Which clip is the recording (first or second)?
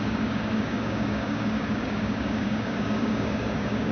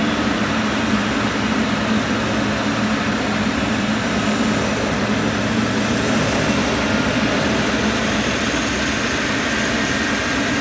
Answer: second